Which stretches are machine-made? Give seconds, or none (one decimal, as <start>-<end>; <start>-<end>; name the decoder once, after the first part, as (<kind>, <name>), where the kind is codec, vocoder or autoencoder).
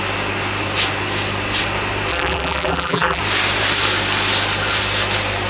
2.1-3.2 (vocoder, BigVGAN v2)